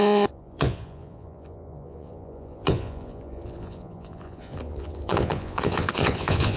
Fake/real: fake